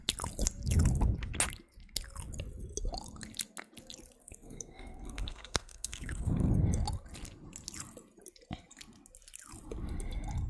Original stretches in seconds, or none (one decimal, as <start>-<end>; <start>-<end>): 0.0-4.2; 6.5-10.5